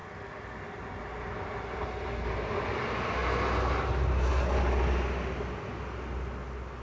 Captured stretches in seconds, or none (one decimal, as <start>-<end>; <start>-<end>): 0.0-6.8